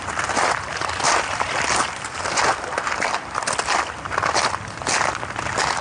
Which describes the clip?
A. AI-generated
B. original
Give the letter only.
B